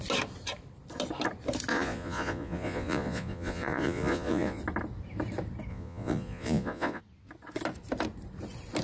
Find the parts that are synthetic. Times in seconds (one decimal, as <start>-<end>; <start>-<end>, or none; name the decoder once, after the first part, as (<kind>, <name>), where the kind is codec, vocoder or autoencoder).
1.7-4.6 (vocoder, Vocos); 5.7-7.0